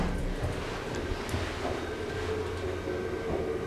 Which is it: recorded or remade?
recorded